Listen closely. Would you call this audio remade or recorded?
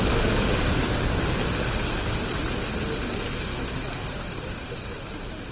recorded